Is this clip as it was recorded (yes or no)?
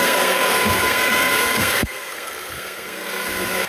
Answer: no